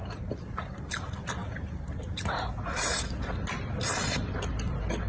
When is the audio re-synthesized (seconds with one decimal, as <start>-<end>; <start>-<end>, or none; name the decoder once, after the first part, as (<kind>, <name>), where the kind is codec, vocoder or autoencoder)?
0.0-0.9 (vocoder, BigVGAN v2); 1.4-3.2